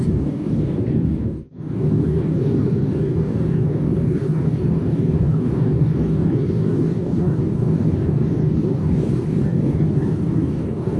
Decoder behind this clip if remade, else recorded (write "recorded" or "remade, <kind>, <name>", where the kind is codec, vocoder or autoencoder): remade, codec, DAC